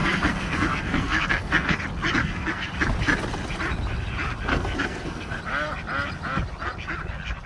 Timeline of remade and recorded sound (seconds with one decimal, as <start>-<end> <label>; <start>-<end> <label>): 0.0-1.8 remade; 1.8-2.2 recorded; 2.2-2.7 remade; 2.7-4.5 recorded; 4.5-5.4 remade; 5.4-7.5 recorded